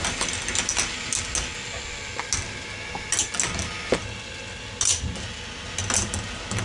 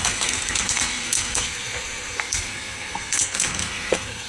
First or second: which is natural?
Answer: first